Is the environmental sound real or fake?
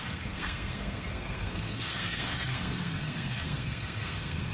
fake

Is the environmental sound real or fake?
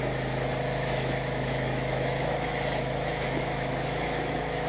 fake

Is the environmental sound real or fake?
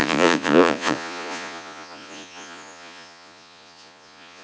fake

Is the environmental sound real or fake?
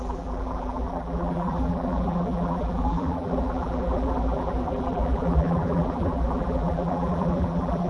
fake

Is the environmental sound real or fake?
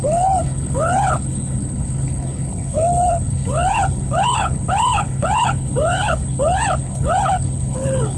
fake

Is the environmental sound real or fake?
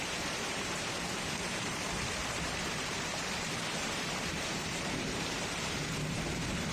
fake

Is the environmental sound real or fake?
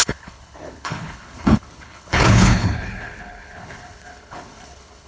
fake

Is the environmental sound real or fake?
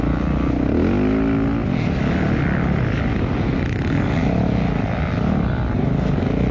real